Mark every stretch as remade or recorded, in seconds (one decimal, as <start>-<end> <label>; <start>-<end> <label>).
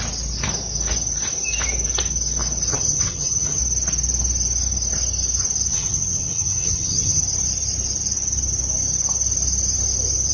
0.0-2.7 recorded; 2.7-3.6 remade; 3.6-5.7 recorded; 5.7-7.2 remade; 7.2-10.3 recorded